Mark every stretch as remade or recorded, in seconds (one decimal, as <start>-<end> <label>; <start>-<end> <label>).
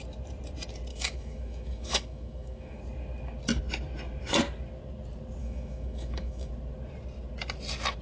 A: 0.0-0.9 recorded; 0.9-2.8 remade; 2.8-5.4 recorded; 5.4-6.5 remade; 6.5-8.0 recorded